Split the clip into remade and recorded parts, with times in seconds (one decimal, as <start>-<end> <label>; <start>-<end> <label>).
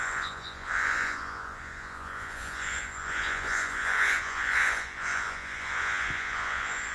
0.0-6.9 remade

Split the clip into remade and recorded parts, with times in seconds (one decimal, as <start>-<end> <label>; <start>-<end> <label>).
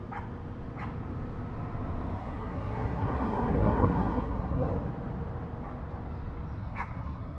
0.0-2.2 recorded; 2.2-4.7 remade; 4.7-6.6 recorded; 6.6-7.4 remade